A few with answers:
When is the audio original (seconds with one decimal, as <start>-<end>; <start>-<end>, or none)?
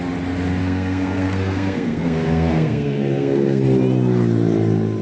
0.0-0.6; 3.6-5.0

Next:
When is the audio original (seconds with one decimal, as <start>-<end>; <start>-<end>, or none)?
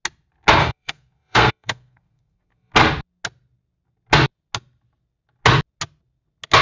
0.0-0.6; 2.7-6.6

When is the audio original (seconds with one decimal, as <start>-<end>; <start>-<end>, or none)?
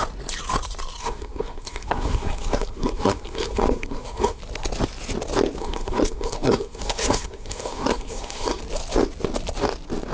0.0-1.0; 4.4-5.6; 8.6-10.1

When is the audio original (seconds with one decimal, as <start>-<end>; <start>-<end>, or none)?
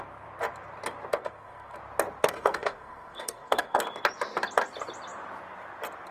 0.0-1.1; 1.8-2.2; 3.8-6.1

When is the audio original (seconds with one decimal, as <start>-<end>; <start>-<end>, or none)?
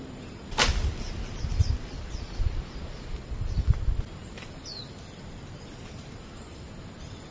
0.0-7.3